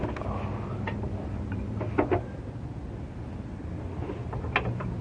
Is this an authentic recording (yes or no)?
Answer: yes